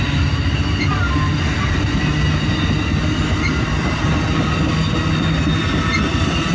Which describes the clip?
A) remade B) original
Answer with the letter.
B